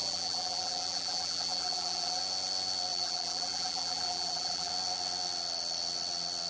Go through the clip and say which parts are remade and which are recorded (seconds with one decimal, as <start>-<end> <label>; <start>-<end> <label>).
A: 0.0-2.2 remade; 2.2-2.9 recorded; 2.9-4.7 remade; 4.7-6.5 recorded